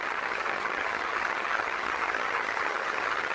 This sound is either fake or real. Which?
fake